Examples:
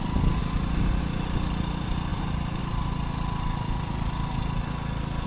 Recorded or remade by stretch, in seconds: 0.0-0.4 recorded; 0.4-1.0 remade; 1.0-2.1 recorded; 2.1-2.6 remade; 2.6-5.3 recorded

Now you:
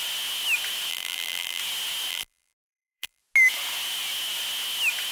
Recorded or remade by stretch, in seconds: 0.0-0.9 recorded; 0.9-1.6 remade; 1.6-2.1 recorded; 2.1-3.2 remade; 3.2-5.1 recorded

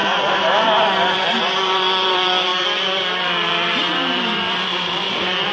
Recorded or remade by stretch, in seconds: 0.0-5.5 remade

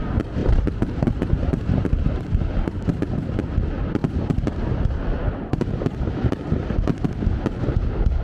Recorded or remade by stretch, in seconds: 0.0-0.4 recorded; 0.4-2.2 remade; 2.2-8.2 recorded

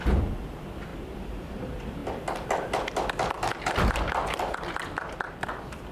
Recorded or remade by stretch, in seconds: 0.0-0.9 recorded; 0.9-1.6 remade; 1.6-5.9 recorded